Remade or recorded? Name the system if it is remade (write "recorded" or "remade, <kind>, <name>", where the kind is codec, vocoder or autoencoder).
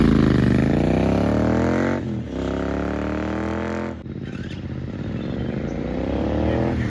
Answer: recorded